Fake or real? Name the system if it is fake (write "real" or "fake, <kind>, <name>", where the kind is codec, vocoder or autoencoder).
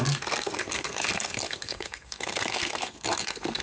fake, codec, SNAC